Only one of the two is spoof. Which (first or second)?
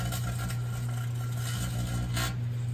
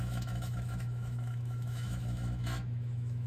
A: second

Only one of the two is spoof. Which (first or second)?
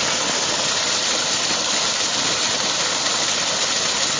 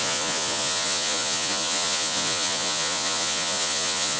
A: second